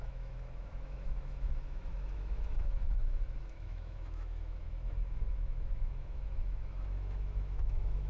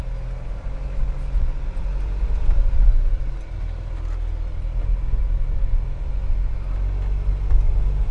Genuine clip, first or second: second